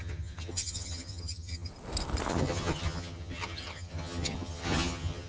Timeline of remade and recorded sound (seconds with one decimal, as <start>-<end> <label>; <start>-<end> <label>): 0.0-1.7 remade; 1.7-2.3 recorded; 2.3-5.3 remade